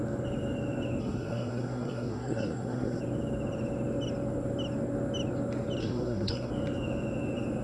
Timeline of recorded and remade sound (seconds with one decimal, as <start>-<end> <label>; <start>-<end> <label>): 0.0-1.0 recorded; 1.0-3.0 remade; 3.0-5.8 recorded; 5.8-6.5 remade; 6.5-7.6 recorded